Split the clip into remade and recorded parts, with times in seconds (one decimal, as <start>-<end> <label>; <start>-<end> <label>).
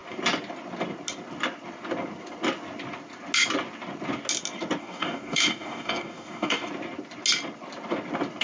0.0-4.8 recorded; 4.8-6.7 remade; 6.7-8.4 recorded